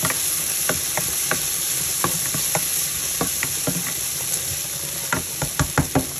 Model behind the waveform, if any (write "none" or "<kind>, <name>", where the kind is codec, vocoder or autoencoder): none